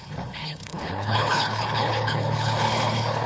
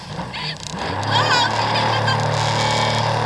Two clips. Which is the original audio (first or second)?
second